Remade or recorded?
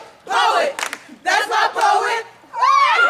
recorded